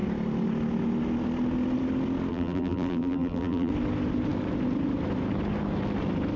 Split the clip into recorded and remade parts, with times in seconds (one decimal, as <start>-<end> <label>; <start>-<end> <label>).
0.0-2.3 recorded; 2.3-3.7 remade; 3.7-6.4 recorded